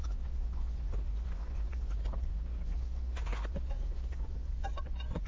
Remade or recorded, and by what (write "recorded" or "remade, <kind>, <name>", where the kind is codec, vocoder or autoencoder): remade, vocoder, Vocos